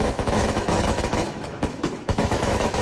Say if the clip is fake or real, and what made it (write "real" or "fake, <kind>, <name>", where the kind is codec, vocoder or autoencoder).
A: fake, autoencoder, DAC-VAE